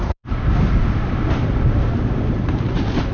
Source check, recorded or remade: remade